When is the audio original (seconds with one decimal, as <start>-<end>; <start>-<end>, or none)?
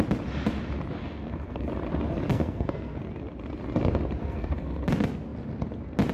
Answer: 0.0-1.0; 1.7-2.3; 3.0-4.2; 4.8-6.1